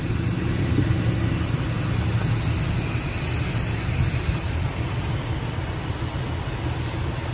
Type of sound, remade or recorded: recorded